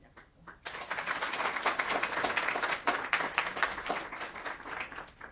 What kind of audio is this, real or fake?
real